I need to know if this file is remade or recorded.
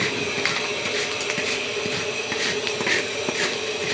recorded